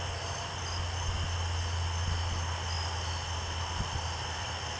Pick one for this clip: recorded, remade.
recorded